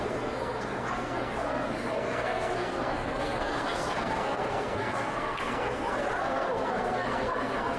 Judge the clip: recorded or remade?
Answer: remade